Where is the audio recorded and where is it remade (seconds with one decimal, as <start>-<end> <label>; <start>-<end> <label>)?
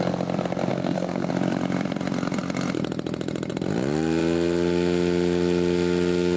0.0-0.7 recorded; 0.7-1.3 remade; 1.3-6.4 recorded